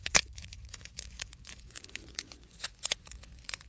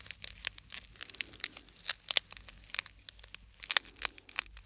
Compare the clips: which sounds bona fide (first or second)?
second